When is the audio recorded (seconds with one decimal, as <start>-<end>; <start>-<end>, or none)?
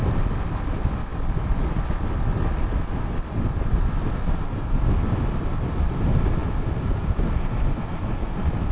0.0-8.7